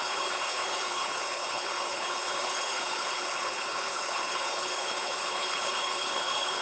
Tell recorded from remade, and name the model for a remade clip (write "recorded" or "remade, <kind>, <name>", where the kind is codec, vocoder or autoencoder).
remade, codec, HILCodec